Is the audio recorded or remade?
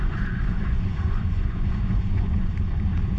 remade